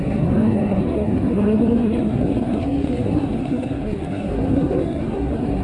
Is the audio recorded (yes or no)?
no